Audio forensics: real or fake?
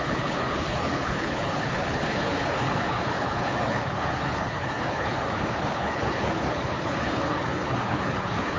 fake